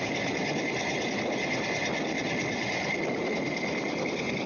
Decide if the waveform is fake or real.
real